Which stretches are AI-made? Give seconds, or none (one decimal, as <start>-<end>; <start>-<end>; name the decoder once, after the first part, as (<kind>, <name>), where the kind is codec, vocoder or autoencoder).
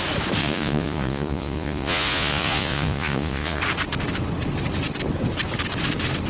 0.4-3.6 (vocoder, Vocos)